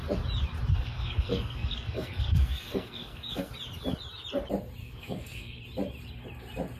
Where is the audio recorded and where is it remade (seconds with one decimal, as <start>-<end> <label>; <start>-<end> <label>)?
0.0-0.7 recorded; 0.7-3.5 remade; 3.5-4.8 recorded; 4.8-5.6 remade; 5.6-6.8 recorded